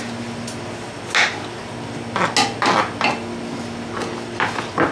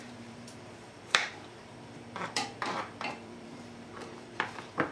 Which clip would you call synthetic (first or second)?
second